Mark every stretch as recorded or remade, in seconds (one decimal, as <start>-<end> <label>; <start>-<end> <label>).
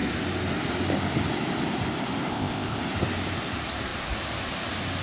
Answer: 0.0-2.3 recorded; 2.3-2.8 remade; 2.8-5.0 recorded